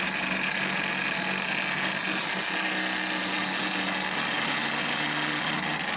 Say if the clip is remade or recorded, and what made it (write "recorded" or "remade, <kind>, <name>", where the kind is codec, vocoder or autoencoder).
recorded